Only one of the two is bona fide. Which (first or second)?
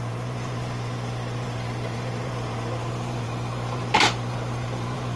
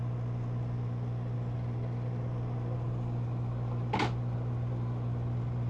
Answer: second